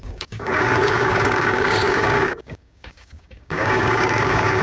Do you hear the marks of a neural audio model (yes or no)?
yes